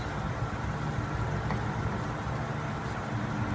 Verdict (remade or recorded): recorded